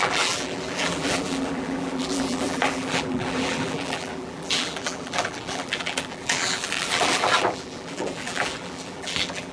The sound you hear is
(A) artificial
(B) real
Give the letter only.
A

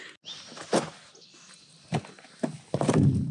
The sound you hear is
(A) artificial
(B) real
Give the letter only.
B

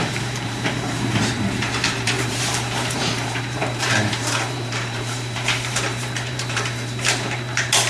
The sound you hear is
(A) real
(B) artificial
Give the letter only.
B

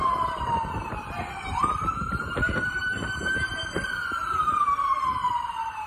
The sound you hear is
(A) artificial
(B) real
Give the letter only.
A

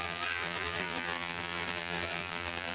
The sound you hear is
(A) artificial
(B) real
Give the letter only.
A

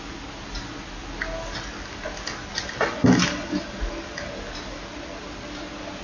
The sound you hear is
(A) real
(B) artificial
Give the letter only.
A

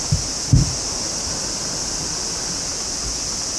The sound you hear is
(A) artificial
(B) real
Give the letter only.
B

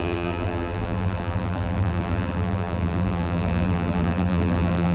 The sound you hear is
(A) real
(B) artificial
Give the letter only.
B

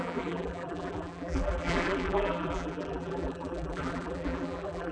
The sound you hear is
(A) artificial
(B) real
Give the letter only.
A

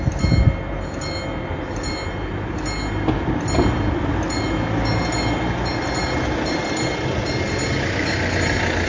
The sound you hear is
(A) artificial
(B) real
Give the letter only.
B